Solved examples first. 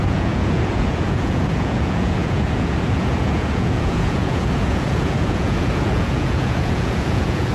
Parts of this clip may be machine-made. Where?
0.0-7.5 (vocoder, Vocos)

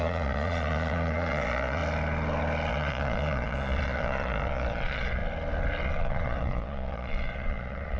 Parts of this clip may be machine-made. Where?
0.0-1.8 (vocoder, Vocos); 2.7-5.2; 5.8-8.0